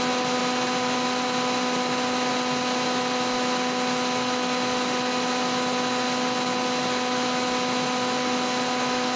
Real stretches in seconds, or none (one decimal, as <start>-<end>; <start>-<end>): 0.0-9.2